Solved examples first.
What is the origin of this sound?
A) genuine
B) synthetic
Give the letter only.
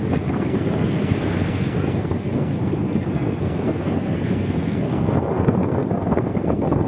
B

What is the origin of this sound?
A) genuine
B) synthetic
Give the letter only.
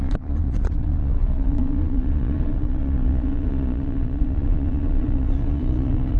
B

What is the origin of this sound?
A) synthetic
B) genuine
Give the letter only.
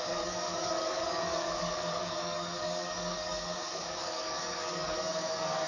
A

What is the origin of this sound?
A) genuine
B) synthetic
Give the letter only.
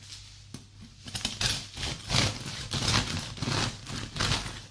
A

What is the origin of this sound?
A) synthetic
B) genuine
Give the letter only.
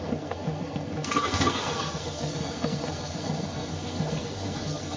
A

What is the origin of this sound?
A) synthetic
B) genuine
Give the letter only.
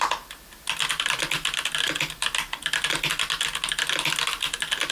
B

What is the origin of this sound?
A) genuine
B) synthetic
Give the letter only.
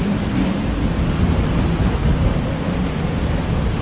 A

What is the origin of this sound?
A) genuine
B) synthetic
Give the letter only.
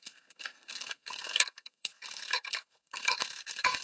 B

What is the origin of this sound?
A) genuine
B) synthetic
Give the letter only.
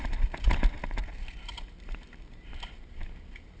A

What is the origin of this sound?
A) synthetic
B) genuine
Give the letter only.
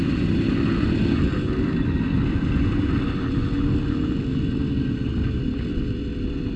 B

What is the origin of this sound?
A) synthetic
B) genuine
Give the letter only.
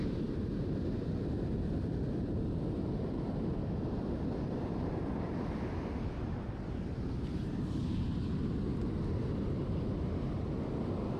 B